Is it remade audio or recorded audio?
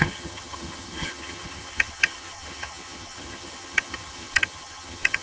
remade